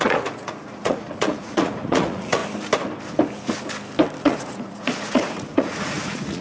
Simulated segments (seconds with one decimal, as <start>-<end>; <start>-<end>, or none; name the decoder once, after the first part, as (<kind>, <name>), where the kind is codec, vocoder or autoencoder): 0.0-2.4 (vocoder, Vocos); 4.2-6.4